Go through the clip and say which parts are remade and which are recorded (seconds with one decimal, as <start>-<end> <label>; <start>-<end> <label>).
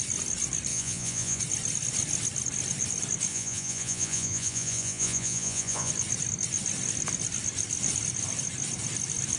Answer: 0.0-0.7 recorded; 0.7-1.4 remade; 1.4-3.3 recorded; 3.3-5.9 remade; 5.9-9.4 recorded